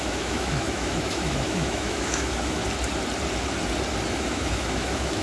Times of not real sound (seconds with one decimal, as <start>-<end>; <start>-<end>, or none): 0.0-2.6; 4.1-5.2